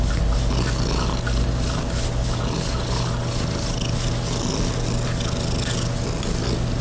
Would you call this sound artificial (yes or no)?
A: no